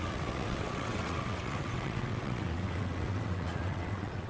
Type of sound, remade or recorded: remade